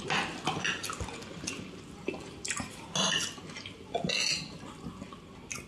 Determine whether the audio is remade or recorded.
recorded